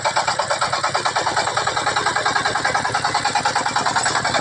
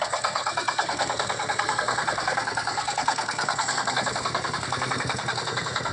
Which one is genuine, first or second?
first